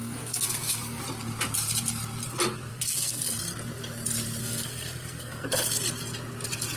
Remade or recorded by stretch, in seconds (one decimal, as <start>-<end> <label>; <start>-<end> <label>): 0.0-1.0 remade; 1.0-2.7 recorded; 2.7-3.4 remade; 3.4-4.4 recorded; 4.4-5.7 remade; 5.7-6.8 recorded